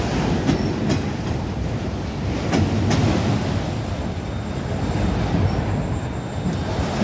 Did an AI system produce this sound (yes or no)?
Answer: no